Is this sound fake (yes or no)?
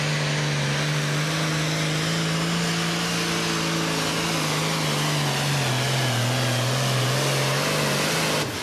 no